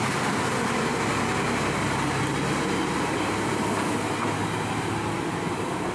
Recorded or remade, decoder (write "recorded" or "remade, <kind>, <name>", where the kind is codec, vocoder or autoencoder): recorded